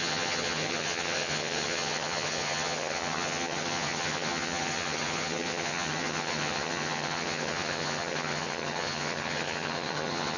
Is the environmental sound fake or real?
fake